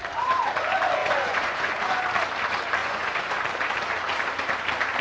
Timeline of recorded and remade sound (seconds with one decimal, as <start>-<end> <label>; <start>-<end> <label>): 0.0-1.0 recorded; 1.0-2.0 remade; 2.0-2.8 recorded; 2.8-3.3 remade; 3.3-5.0 recorded